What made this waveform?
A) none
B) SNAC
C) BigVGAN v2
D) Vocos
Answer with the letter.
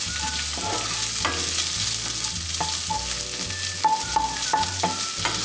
A